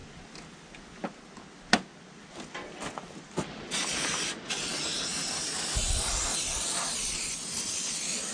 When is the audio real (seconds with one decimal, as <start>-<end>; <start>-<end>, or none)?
0.0-8.3